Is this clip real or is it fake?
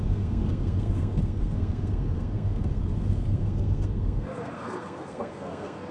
fake